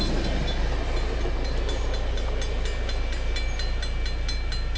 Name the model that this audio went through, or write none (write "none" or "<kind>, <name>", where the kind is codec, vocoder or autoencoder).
none